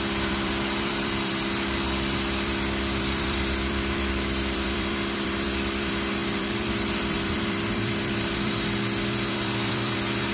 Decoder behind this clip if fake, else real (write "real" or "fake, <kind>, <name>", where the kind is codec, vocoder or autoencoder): fake, vocoder, BigVGAN v2